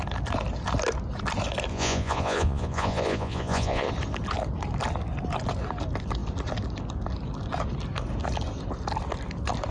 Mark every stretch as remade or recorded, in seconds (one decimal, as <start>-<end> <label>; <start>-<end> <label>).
0.0-1.7 recorded; 1.7-3.9 remade; 3.9-9.7 recorded